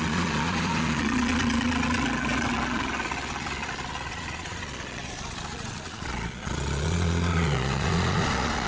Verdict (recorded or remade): remade